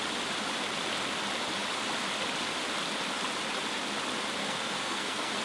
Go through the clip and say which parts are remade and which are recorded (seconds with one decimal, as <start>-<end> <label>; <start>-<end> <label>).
0.0-4.4 recorded; 4.4-5.4 remade